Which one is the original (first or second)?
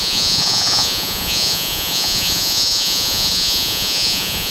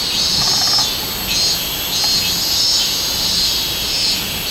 second